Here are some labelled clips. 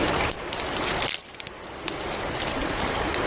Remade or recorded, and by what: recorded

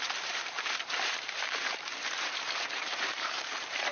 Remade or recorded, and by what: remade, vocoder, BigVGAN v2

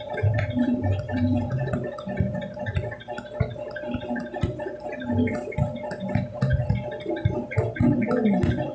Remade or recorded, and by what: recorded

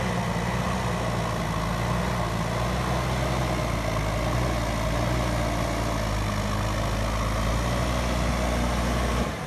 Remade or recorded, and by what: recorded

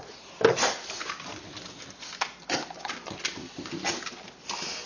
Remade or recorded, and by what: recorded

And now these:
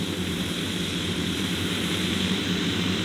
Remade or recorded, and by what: remade, vocoder, BigVGAN v2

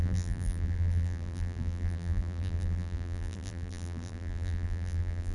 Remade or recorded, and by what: remade, vocoder, BigVGAN v2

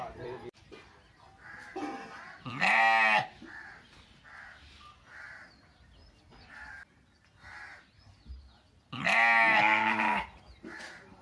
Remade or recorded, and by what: recorded